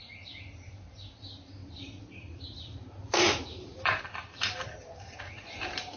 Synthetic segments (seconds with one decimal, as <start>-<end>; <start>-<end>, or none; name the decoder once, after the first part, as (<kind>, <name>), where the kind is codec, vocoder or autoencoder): 1.6-5.2 (vocoder, BigVGAN v2)